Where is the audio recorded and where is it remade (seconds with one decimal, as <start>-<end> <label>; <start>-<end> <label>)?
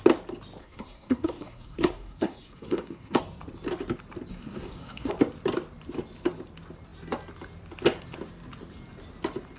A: 0.0-0.6 recorded; 0.6-3.2 remade; 3.2-4.3 recorded; 4.3-5.1 remade; 5.1-9.6 recorded